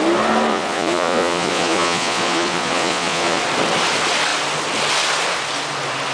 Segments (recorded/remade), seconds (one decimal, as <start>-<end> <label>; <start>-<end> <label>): 0.0-0.5 recorded; 0.5-3.4 remade; 3.4-6.1 recorded